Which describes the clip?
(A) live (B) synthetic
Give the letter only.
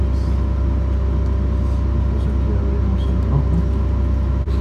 A